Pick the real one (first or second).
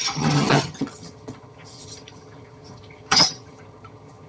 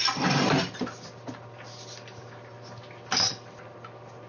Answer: second